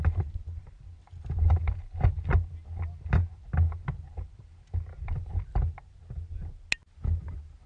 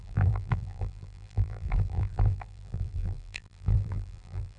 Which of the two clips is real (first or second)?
first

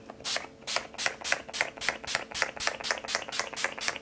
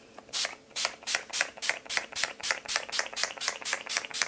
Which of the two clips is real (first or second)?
first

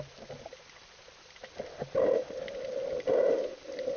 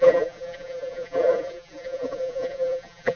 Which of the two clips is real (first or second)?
first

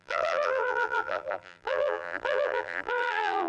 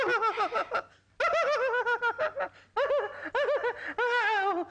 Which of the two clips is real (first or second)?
second